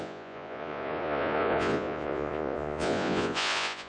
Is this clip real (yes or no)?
no